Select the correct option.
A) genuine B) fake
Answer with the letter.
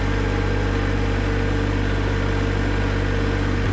A